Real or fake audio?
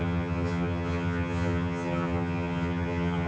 fake